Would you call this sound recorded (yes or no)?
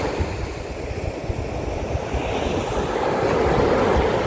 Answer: yes